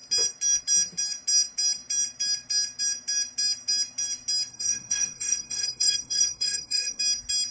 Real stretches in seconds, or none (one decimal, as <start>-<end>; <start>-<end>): 0.0-4.5; 7.0-7.5